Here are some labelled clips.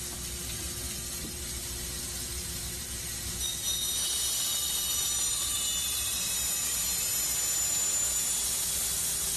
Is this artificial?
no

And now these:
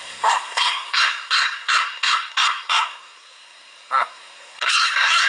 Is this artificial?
yes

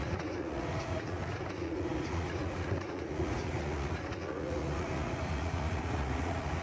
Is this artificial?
yes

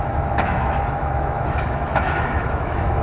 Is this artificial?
yes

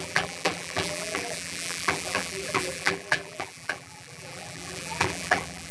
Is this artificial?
yes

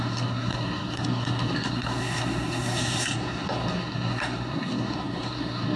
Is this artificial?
yes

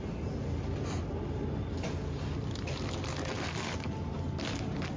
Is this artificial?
no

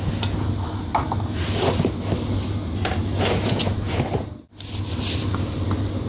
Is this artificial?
no